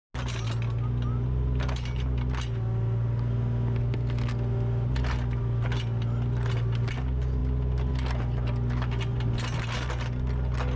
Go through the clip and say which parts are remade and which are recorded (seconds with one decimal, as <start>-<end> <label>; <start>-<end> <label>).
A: 0.0-10.8 recorded